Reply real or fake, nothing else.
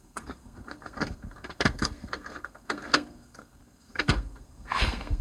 fake